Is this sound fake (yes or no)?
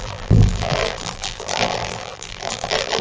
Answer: yes